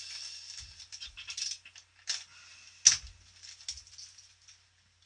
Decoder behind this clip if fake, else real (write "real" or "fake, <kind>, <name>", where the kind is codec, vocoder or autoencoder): real